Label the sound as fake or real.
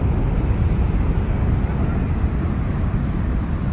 real